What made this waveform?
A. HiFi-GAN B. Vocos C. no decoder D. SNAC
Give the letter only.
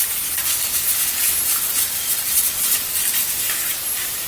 C